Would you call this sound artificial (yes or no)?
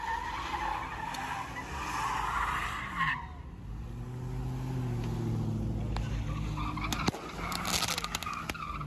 no